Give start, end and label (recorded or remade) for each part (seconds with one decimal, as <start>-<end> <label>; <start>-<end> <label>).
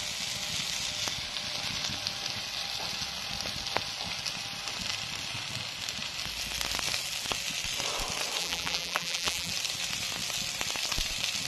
0.0-8.4 recorded; 8.4-9.5 remade; 9.5-11.5 recorded